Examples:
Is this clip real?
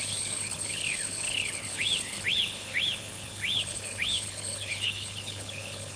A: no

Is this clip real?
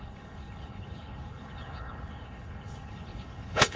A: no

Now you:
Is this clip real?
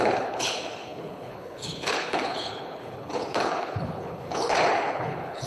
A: no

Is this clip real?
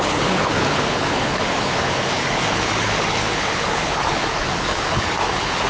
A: no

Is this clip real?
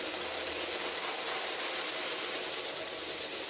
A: yes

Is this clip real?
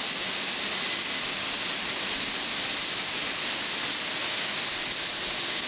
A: yes